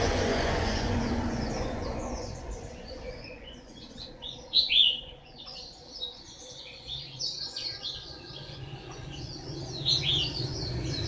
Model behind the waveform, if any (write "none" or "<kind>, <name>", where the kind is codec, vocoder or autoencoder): vocoder, Vocos